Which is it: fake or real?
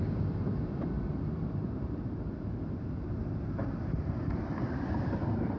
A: fake